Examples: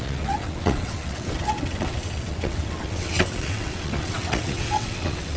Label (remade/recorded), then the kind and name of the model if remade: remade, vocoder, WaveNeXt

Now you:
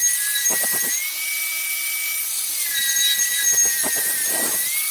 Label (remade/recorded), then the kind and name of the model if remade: recorded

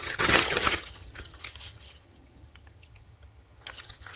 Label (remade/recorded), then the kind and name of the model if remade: remade, vocoder, HiFi-GAN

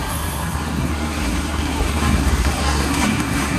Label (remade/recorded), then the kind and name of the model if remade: remade, codec, SNAC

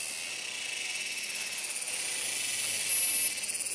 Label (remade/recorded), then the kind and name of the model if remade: recorded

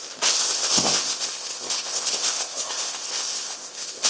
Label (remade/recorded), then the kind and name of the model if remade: remade, codec, ZipCodec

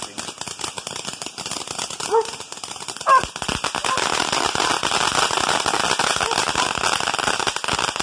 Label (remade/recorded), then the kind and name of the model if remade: recorded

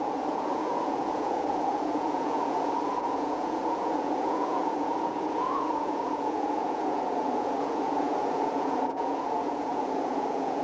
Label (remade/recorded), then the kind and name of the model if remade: remade, vocoder, Vocos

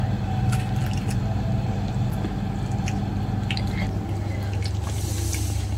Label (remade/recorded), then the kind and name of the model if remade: recorded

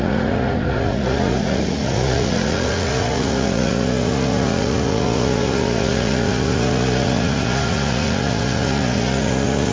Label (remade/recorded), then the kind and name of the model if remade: remade, vocoder, Vocos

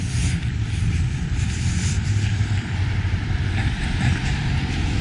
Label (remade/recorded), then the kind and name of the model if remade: remade, vocoder, BigVGAN v2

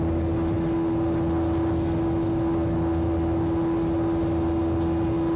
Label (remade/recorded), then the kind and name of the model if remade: recorded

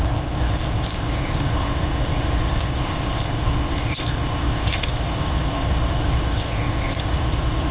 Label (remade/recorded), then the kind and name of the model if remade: remade, codec, ZipCodec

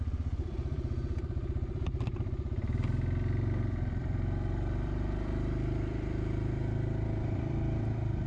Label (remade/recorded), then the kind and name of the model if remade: remade, vocoder, BigVGAN v2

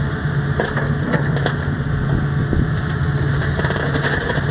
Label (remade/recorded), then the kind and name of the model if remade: recorded